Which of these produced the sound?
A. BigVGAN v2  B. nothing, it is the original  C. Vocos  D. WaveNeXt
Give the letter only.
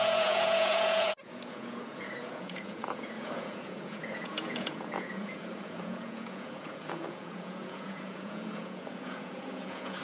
C